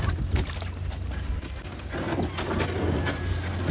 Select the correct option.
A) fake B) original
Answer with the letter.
B